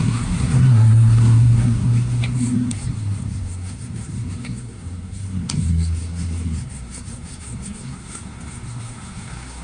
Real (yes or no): no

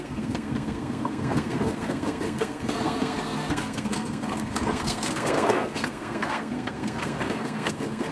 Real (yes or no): no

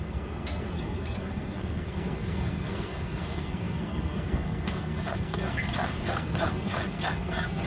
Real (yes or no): no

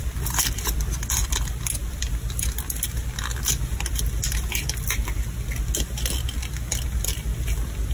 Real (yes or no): yes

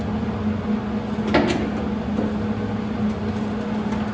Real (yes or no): yes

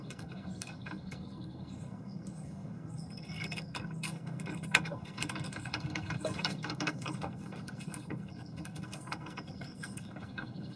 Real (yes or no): no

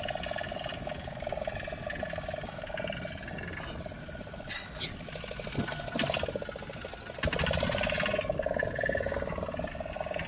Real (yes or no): yes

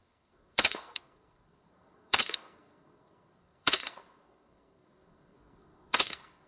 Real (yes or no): no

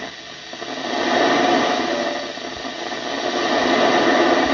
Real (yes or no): yes